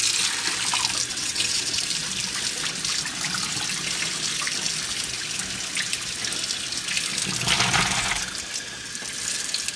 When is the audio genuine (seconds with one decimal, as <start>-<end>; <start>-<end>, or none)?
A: 0.0-1.1; 1.8-9.8